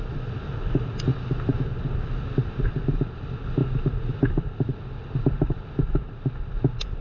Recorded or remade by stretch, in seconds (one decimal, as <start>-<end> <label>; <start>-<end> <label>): 0.0-7.0 recorded